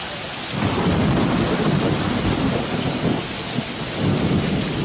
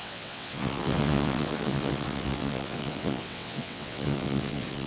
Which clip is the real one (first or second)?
first